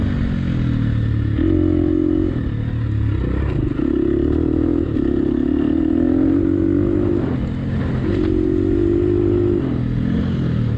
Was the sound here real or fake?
real